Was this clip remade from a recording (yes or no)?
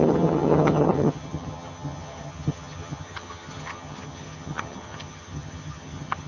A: yes